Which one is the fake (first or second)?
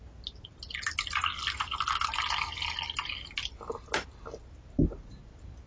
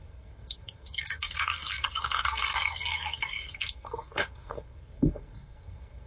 second